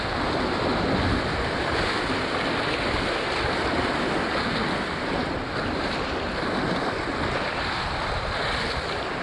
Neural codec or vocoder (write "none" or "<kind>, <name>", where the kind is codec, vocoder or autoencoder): none